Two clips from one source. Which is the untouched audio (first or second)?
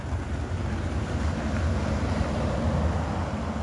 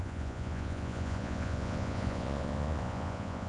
first